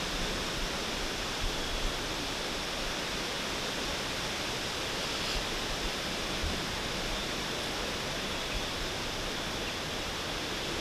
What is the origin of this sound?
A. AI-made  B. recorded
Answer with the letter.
B